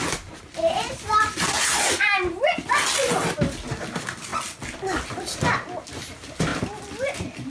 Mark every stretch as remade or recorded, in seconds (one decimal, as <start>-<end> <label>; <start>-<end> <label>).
0.0-7.5 recorded